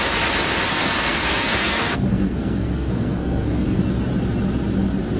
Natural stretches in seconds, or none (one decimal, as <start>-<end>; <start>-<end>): 0.0-0.7; 3.8-5.2